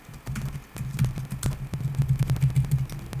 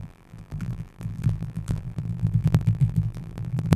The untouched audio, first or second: first